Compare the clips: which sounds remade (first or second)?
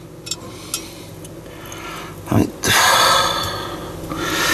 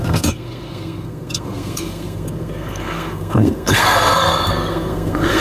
second